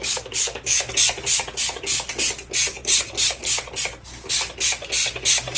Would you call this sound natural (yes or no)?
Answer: yes